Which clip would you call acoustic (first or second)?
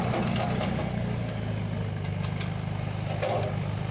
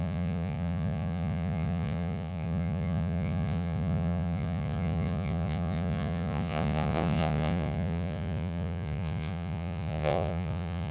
first